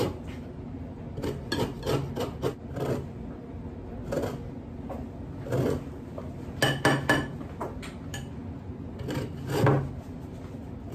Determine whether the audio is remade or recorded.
recorded